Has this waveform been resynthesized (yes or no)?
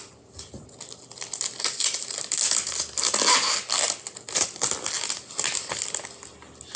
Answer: no